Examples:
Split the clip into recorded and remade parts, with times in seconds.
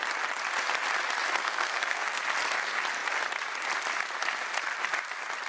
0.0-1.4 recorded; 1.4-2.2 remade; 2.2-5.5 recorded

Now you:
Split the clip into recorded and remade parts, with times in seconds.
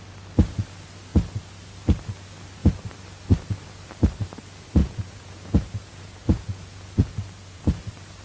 0.0-4.8 recorded; 4.8-7.6 remade; 7.6-8.2 recorded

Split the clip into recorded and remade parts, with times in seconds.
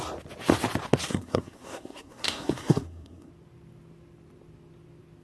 0.0-1.1 recorded; 1.1-3.3 remade; 3.3-5.2 recorded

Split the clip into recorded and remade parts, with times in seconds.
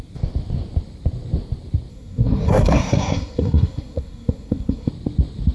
0.0-1.9 recorded; 1.9-4.9 remade; 4.9-5.5 recorded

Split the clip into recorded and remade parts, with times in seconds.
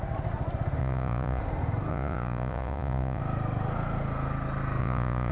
0.0-0.8 recorded; 0.8-1.4 remade; 1.4-1.9 recorded; 1.9-3.2 remade; 3.2-4.8 recorded; 4.8-5.3 remade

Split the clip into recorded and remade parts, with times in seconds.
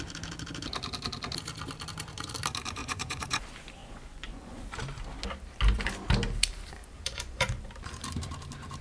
0.0-2.8 recorded; 2.8-3.4 remade; 3.4-3.8 recorded; 3.8-4.6 remade; 4.6-6.8 recorded; 6.8-7.7 remade; 7.7-8.8 recorded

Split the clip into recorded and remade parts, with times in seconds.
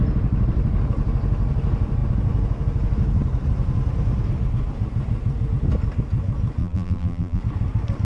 0.0-6.6 recorded; 6.6-7.4 remade; 7.4-8.0 recorded